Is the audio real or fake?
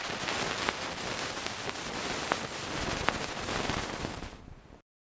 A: real